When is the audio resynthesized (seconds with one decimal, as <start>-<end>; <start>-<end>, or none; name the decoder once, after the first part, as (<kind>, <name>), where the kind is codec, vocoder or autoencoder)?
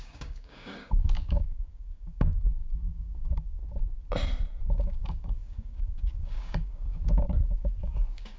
0.0-3.6 (codec, DAC); 4.6-8.4